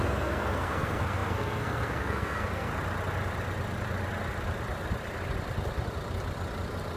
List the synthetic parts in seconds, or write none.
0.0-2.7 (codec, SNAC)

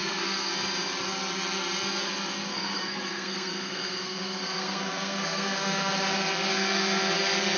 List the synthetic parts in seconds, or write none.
0.0-0.5 (codec, SNAC); 2.5-5.9; 6.5-7.0